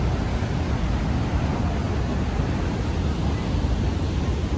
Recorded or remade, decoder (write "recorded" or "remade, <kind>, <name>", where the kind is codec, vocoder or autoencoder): recorded